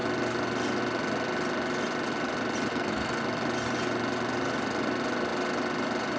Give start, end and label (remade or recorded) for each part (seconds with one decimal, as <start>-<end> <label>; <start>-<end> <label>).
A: 0.0-2.7 recorded; 2.7-3.2 remade; 3.2-6.2 recorded